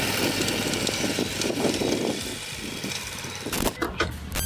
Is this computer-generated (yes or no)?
no